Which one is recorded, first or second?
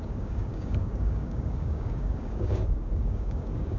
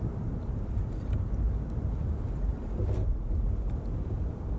second